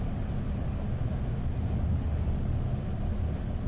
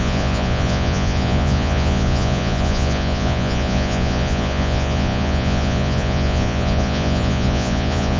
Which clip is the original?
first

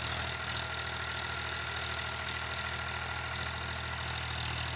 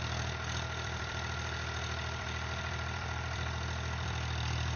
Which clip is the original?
first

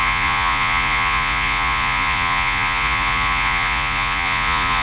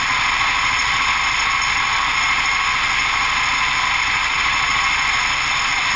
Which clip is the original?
second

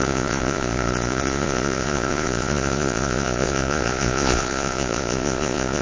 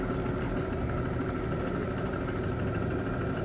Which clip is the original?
second